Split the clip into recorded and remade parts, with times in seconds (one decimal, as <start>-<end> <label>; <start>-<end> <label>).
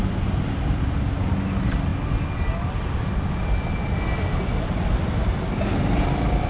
0.0-6.5 recorded